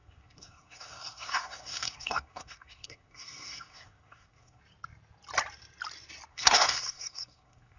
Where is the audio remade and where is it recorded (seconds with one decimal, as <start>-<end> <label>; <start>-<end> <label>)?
0.0-4.6 remade; 4.6-6.3 recorded; 6.3-7.8 remade